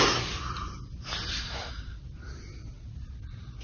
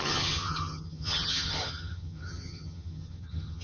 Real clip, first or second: first